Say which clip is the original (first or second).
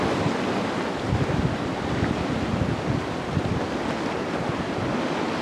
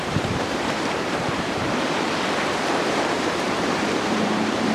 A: first